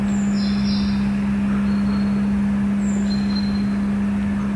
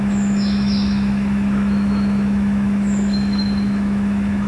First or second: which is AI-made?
second